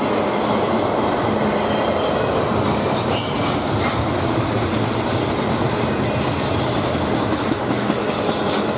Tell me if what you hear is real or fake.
real